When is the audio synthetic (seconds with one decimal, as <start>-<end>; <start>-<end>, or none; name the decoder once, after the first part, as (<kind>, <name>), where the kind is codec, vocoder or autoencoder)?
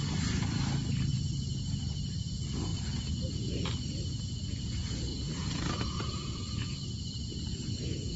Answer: 5.1-8.2 (vocoder, Vocos)